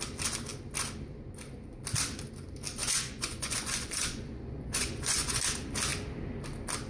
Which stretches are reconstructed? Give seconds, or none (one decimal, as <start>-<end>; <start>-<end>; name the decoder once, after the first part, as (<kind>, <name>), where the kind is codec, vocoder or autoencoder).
2.8-5.4 (vocoder, Vocos)